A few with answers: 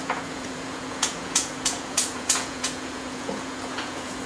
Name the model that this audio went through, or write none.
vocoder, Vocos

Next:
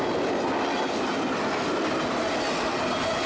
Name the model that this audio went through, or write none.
none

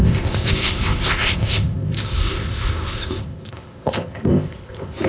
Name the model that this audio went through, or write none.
codec, ZipCodec